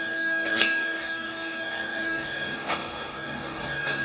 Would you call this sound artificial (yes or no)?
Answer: yes